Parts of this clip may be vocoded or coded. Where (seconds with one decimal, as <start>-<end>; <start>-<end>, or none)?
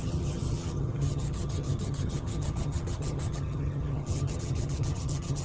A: 0.0-5.4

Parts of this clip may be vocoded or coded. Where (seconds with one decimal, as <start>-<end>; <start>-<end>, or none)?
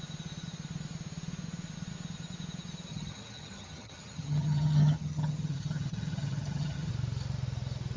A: 2.9-6.9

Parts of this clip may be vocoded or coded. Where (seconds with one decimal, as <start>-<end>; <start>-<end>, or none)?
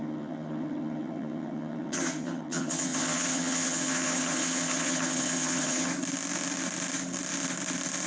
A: 0.0-5.9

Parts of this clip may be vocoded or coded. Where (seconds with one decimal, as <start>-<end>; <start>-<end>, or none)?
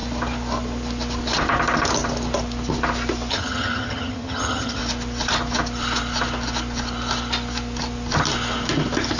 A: 3.3-4.8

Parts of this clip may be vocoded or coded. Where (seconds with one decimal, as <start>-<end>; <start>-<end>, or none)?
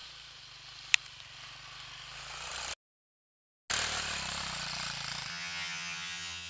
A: 5.3-6.5